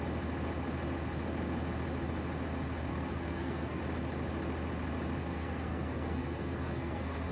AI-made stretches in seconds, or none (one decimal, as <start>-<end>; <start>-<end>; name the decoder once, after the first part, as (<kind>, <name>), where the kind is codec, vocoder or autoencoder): 2.9-3.8 (codec, SNAC); 5.2-7.3